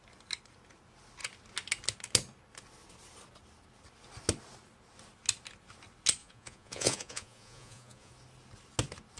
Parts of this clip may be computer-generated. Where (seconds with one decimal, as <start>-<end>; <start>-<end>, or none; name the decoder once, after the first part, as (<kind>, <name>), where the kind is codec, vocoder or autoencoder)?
6.2-8.1 (vocoder, Vocos)